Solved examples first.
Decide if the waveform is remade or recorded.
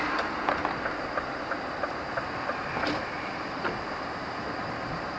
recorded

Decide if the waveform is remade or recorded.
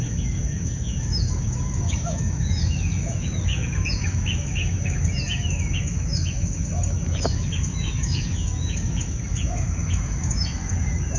remade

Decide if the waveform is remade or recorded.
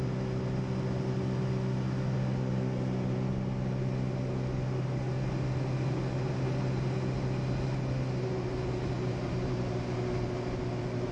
recorded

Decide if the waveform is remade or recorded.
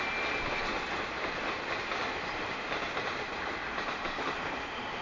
recorded